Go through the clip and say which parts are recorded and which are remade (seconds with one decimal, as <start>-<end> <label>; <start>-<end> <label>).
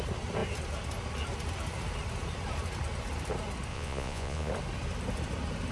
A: 0.0-3.7 recorded; 3.7-4.5 remade; 4.5-5.7 recorded